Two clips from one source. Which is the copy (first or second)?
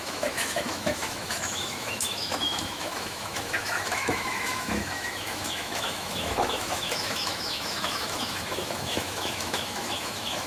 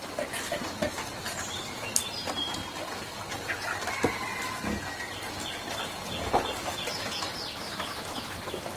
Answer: first